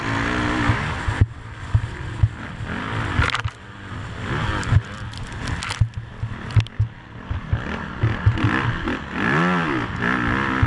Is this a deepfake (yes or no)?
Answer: no